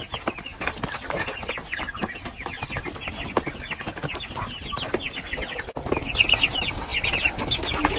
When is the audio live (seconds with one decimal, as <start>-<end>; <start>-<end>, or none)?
0.0-8.0